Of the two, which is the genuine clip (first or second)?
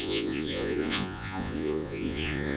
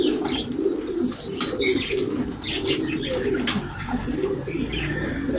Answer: second